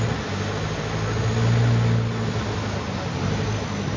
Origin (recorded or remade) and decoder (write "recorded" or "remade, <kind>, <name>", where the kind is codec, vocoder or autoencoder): recorded